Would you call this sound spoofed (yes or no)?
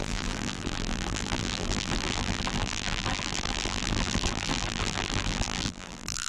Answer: yes